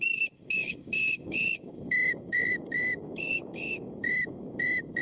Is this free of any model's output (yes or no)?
no